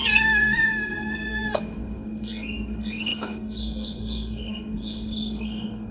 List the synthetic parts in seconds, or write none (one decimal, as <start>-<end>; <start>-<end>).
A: 0.0-5.9